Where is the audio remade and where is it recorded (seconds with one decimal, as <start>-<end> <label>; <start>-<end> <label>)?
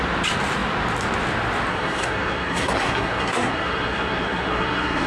0.0-1.7 recorded; 1.7-5.1 remade